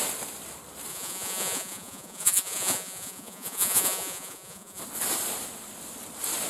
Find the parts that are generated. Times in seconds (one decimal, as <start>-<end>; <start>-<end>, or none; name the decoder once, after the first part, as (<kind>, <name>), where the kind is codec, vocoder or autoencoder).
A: 0.9-4.8 (vocoder, Vocos)